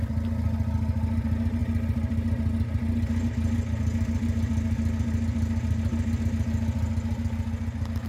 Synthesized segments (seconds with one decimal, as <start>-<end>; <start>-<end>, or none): none